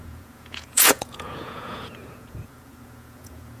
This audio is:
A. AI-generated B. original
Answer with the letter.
A